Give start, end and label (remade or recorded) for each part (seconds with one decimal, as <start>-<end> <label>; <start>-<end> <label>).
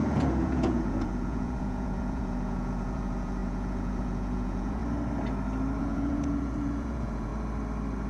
0.0-4.8 remade; 4.8-5.8 recorded; 5.8-7.3 remade; 7.3-8.1 recorded